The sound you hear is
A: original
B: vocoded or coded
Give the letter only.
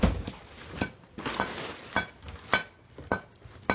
A